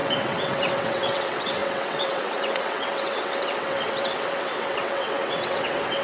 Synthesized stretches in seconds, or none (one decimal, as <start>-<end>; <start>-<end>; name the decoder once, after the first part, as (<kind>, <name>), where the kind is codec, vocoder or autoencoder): 0.0-6.0 (vocoder, WaveNeXt)